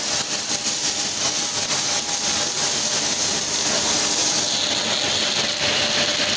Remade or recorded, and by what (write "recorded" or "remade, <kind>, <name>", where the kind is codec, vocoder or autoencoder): recorded